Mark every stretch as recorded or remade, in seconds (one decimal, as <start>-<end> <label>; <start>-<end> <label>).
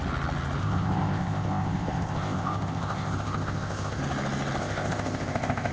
0.0-0.6 recorded; 0.6-4.0 remade; 4.0-4.6 recorded; 4.6-5.7 remade